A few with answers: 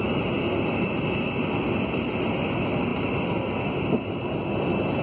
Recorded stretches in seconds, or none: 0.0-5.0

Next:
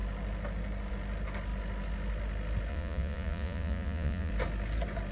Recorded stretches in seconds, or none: 0.0-2.7; 4.3-5.1

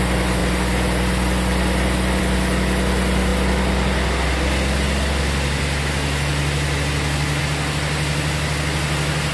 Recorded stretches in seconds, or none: 0.0-9.3

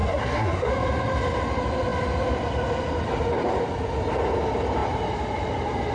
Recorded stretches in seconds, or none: 0.7-5.9

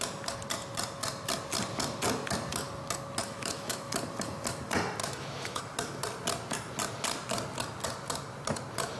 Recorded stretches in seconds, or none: 0.0-3.2; 3.9-5.0; 5.6-9.0

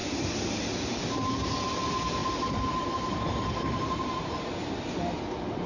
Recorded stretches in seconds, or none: 1.0-2.2